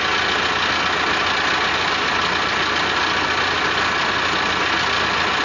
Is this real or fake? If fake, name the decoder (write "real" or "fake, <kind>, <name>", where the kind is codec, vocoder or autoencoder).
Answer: real